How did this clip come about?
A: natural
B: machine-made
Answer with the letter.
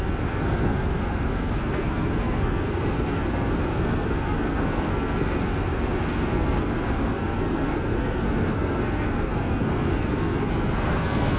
B